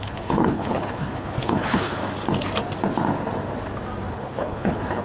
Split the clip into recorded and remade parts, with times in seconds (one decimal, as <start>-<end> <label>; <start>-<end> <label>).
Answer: 0.0-2.0 remade; 2.0-4.1 recorded; 4.1-5.0 remade